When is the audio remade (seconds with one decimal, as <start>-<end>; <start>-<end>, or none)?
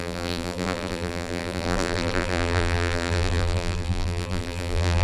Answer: 0.0-5.0